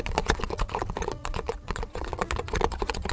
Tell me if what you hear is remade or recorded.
remade